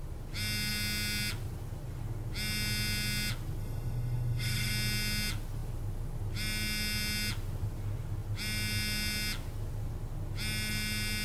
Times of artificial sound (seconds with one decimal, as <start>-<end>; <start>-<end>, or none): 3.6-4.7